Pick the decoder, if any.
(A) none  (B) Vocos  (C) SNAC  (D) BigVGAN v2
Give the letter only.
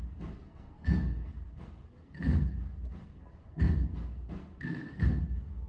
C